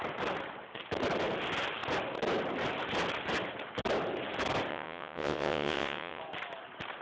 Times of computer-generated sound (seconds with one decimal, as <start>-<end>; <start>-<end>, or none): 4.7-6.2